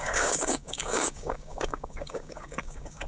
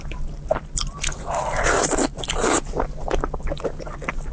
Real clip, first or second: second